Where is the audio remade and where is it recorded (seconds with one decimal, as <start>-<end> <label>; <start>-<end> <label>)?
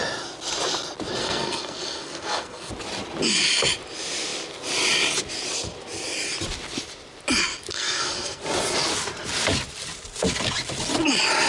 0.0-1.2 recorded; 1.2-2.7 remade; 2.7-7.7 recorded; 7.7-8.4 remade; 8.4-11.5 recorded